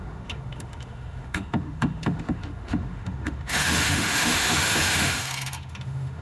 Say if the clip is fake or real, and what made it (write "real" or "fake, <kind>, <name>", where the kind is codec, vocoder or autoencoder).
fake, autoencoder, DAC-VAE